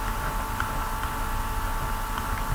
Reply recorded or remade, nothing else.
recorded